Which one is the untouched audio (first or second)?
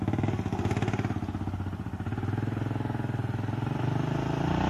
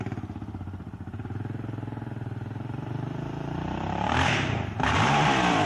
first